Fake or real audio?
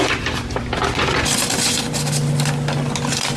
real